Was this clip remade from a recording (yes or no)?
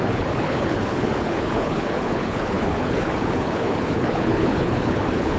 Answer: yes